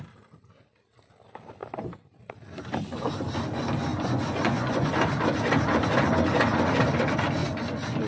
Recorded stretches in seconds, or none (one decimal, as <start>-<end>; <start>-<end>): 0.0-3.9; 4.9-8.1